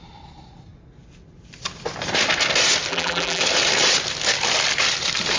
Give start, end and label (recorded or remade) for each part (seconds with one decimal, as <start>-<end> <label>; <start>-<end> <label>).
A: 0.0-2.9 recorded; 2.9-3.4 remade; 3.4-5.4 recorded